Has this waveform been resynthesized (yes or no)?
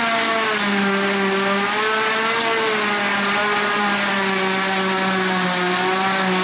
no